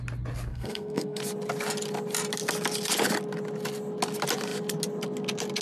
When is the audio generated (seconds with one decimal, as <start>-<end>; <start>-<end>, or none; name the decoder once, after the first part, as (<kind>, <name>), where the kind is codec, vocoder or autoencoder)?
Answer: 0.5-1.2 (codec, SNAC)